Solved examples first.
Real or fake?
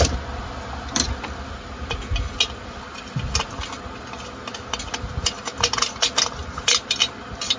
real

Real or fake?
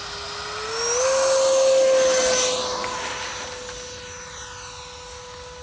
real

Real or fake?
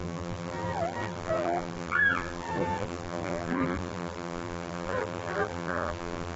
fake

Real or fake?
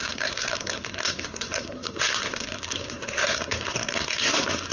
fake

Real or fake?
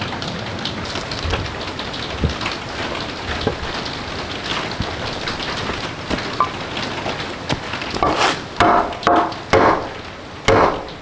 real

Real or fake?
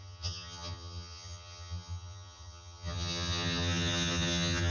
fake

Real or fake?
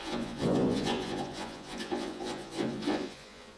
fake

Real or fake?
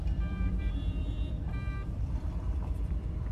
fake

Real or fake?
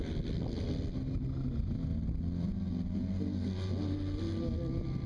real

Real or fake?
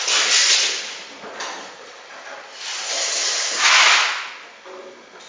real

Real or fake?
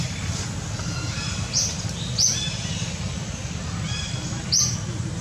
real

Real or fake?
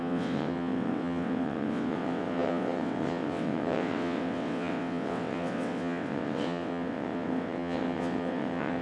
fake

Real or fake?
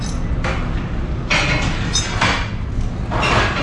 real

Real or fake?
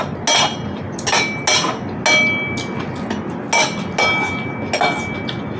real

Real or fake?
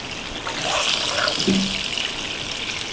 real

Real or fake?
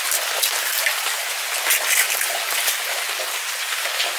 real